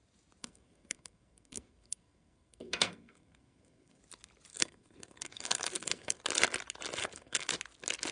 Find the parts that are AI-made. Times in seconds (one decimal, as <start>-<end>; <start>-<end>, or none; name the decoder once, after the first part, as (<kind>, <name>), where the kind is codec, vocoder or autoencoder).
0.4-4.0 (codec, SNAC); 4.5-6.2; 7.0-7.5